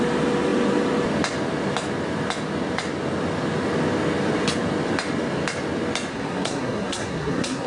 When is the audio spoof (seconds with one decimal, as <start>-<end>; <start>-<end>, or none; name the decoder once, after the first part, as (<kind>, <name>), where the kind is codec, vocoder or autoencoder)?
6.1-7.7 (codec, SNAC)